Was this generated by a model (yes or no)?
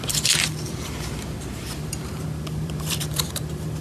yes